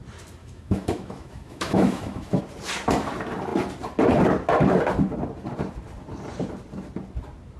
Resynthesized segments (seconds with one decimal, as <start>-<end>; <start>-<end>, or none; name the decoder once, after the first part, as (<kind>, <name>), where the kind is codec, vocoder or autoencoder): 0.4-2.4 (autoencoder, DAC-VAE)